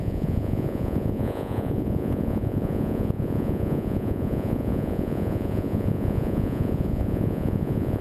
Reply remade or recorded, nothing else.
remade